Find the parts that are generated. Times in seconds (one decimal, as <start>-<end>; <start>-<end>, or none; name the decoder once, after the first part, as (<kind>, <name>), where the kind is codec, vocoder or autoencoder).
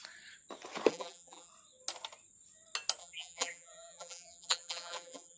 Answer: 0.9-1.5 (vocoder, BigVGAN v2); 3.0-5.4